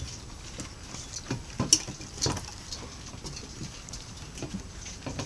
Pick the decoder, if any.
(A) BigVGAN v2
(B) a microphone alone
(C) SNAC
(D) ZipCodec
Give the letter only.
B